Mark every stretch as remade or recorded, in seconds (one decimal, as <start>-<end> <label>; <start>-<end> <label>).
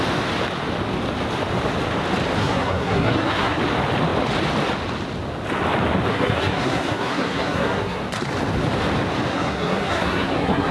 0.0-2.4 recorded; 2.4-3.6 remade; 3.6-6.1 recorded; 6.1-8.0 remade; 8.0-9.3 recorded; 9.3-10.7 remade